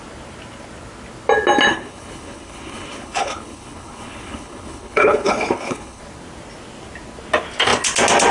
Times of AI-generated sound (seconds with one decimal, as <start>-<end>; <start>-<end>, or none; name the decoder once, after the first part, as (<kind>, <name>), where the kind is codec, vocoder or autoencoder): 1.7-6.0 (codec, HILCodec)